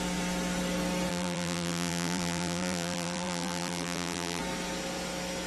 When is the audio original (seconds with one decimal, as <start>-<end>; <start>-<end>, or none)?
0.0-1.1; 4.4-5.5